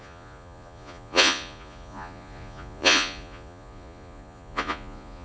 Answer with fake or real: fake